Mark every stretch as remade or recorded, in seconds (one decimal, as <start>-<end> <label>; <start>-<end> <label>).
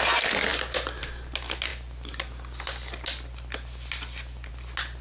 0.0-5.0 recorded